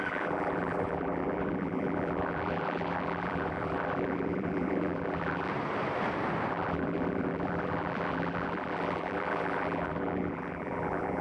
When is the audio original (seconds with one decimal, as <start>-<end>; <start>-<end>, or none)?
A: 5.5-6.5